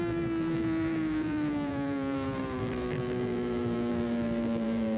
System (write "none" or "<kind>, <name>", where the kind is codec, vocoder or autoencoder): vocoder, BigVGAN v2